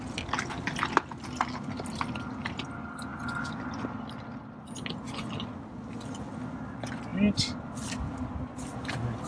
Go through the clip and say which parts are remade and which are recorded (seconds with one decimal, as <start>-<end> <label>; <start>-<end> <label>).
0.0-9.3 recorded